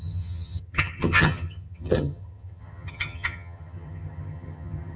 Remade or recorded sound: remade